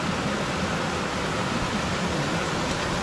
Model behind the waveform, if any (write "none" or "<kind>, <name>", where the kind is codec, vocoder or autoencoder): none